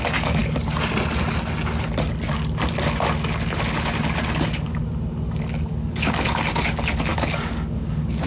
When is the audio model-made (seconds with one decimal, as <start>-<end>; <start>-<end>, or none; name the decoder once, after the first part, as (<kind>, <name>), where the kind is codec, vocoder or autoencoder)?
0.0-0.4 (codec, DAC); 4.2-4.8; 5.7-8.3